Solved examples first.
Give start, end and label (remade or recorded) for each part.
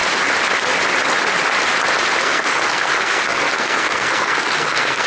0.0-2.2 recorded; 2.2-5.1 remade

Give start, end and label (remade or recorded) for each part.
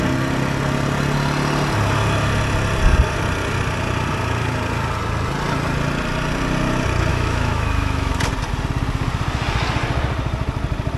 0.0-7.1 recorded; 7.1-8.2 remade; 8.2-11.0 recorded